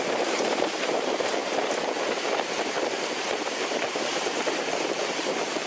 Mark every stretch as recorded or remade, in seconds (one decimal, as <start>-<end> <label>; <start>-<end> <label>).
0.0-1.4 remade; 1.4-2.9 recorded; 2.9-5.7 remade